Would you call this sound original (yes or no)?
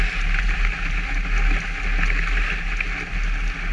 yes